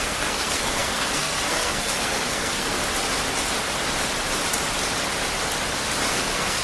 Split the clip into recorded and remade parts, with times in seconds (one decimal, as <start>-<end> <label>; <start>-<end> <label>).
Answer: 0.0-2.8 remade; 2.8-6.1 recorded; 6.1-6.6 remade